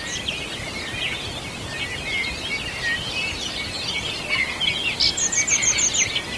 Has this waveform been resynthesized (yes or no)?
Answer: no